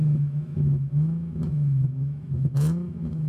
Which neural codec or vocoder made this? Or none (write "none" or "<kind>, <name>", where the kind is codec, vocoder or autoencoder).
autoencoder, DAC-VAE